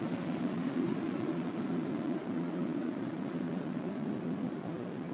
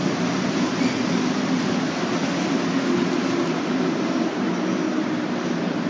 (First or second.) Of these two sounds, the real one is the second